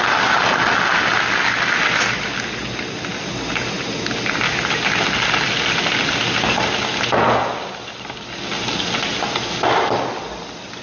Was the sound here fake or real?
real